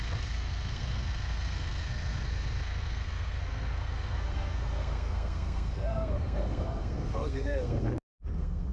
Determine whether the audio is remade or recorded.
remade